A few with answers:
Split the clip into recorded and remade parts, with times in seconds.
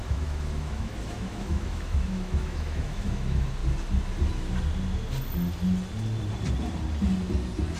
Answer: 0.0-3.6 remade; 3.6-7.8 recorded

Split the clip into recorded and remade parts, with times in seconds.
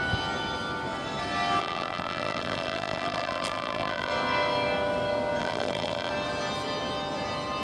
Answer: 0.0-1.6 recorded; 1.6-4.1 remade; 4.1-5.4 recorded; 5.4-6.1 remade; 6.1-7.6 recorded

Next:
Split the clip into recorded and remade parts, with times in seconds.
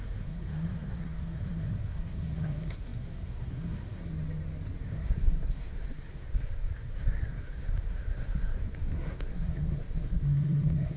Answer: 0.0-4.1 remade; 4.1-4.8 recorded; 4.8-11.0 remade